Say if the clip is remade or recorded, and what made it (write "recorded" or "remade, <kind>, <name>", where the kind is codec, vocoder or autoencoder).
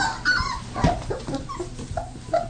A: recorded